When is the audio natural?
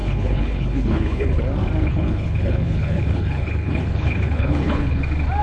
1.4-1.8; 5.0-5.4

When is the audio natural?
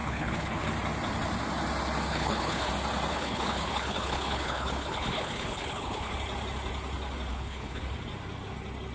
0.6-2.1; 2.7-3.1; 6.1-7.3; 7.8-8.9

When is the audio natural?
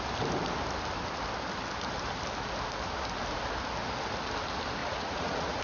0.0-4.8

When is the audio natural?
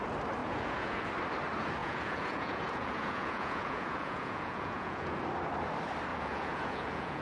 0.0-0.4; 1.1-1.8; 5.2-6.1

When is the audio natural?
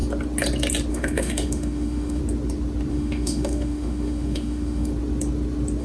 0.0-0.9; 2.2-2.9; 4.9-5.8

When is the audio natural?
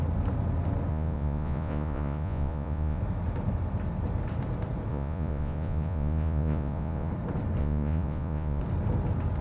0.0-0.9; 3.0-4.9; 7.1-7.6; 8.6-9.4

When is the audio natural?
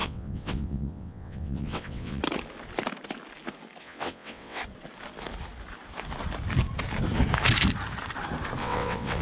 2.2-3.8; 4.6-8.6